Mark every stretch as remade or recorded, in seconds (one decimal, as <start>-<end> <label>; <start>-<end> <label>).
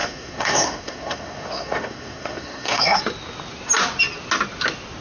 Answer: 0.0-3.0 remade; 3.0-5.0 recorded